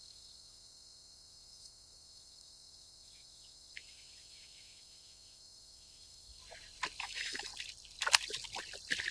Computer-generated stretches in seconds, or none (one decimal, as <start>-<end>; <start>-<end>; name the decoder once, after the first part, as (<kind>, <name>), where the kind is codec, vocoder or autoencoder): 0.0-6.4 (autoencoder, DAC-VAE); 7.0-7.5